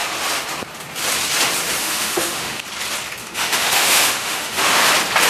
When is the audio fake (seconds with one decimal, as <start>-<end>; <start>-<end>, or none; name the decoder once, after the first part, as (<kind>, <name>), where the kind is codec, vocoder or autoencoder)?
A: 1.8-2.6 (autoencoder, DAC-VAE); 3.2-4.8